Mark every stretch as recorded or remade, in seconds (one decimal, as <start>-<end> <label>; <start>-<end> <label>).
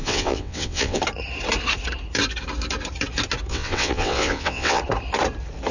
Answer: 0.0-1.0 remade; 1.0-3.5 recorded; 3.5-4.8 remade; 4.8-5.7 recorded